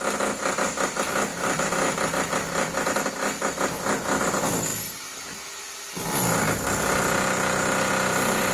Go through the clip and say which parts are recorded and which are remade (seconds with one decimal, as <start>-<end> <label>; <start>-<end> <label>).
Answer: 0.0-1.3 recorded; 1.3-3.1 remade; 3.1-8.5 recorded